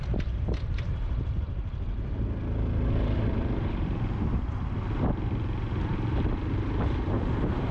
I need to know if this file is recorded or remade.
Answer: recorded